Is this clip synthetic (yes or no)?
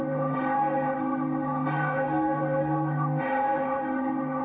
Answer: yes